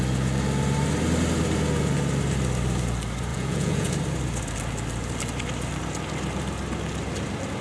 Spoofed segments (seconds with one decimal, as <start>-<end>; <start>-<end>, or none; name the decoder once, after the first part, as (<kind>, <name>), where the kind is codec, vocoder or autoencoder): 3.3-3.9 (vocoder, Vocos)